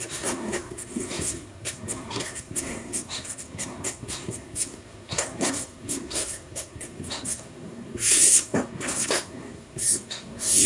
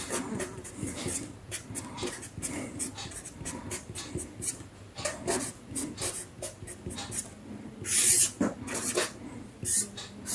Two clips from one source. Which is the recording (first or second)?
second